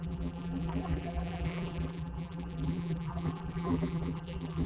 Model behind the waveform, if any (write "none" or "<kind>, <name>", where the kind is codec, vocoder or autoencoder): vocoder, BigVGAN v2